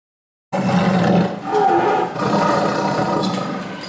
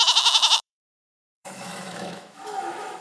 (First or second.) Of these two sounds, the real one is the first